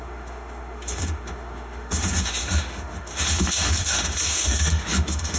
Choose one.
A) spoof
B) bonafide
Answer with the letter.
A